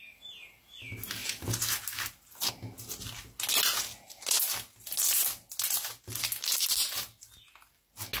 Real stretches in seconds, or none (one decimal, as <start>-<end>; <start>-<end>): 0.0-8.2